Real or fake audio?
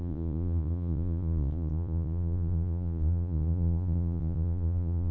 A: fake